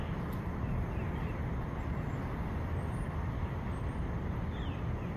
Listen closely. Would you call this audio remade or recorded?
recorded